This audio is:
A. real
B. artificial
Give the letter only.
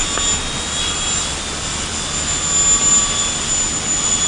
A